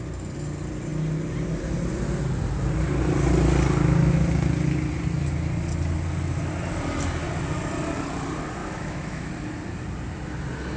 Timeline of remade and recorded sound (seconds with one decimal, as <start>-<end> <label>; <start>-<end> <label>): 0.0-8.6 recorded; 8.6-9.3 remade; 9.3-10.8 recorded